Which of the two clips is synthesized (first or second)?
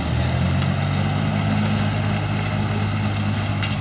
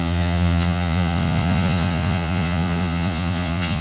second